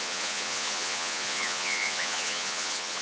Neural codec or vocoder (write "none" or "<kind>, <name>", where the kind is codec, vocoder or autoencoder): vocoder, Vocos